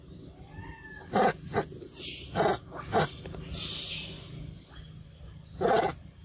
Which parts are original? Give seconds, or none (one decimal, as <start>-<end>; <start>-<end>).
0.0-6.2